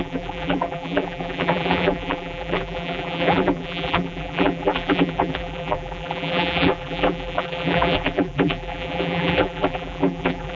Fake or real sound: fake